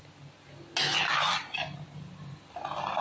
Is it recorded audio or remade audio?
recorded